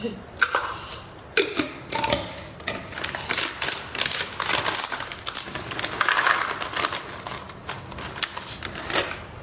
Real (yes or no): yes